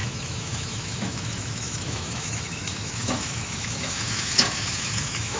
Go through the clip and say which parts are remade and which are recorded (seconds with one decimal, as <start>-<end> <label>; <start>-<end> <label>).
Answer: 0.0-5.4 remade